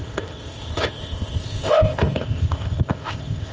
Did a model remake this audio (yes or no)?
yes